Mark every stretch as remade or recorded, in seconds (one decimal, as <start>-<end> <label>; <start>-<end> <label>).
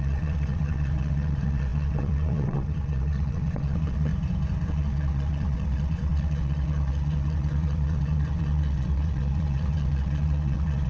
0.0-4.1 remade; 4.1-4.7 recorded; 4.7-10.9 remade